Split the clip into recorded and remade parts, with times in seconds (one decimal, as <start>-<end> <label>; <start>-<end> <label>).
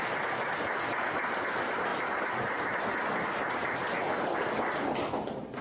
0.0-5.6 recorded